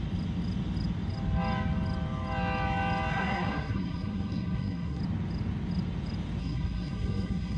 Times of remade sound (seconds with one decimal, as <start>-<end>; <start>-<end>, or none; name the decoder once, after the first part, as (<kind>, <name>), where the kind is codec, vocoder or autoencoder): 3.1-5.0 (codec, SNAC); 6.4-7.6